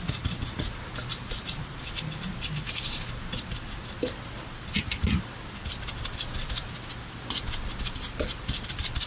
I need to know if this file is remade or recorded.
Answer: recorded